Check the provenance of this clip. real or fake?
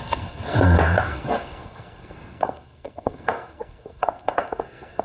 fake